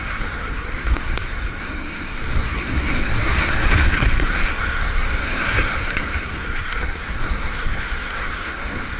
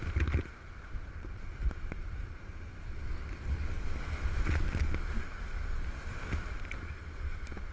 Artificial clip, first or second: first